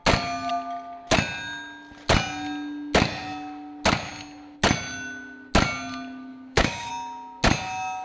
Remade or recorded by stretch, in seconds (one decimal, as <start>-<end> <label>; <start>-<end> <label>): 0.0-6.3 recorded; 6.3-6.9 remade; 6.9-8.0 recorded